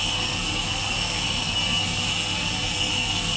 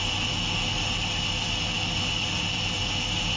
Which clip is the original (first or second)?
second